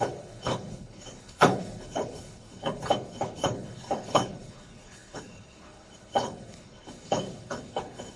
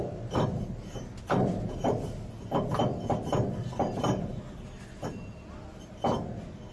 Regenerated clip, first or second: first